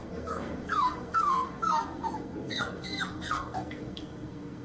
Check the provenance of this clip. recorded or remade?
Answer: remade